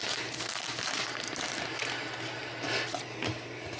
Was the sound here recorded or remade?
recorded